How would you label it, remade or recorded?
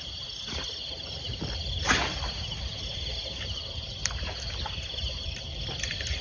recorded